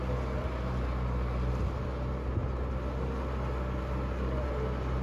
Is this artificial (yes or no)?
no